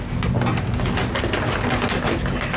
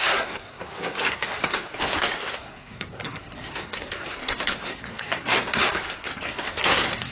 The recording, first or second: first